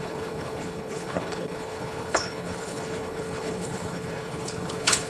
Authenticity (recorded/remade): remade